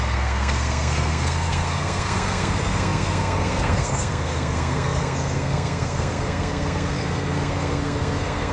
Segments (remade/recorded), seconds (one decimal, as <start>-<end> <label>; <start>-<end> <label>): 0.0-8.5 remade